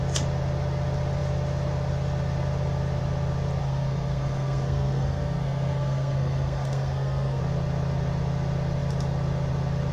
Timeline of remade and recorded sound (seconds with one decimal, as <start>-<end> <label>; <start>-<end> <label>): 0.0-3.6 recorded; 3.6-7.4 remade; 7.4-9.9 recorded